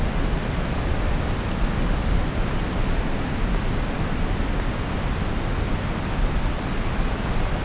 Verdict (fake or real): real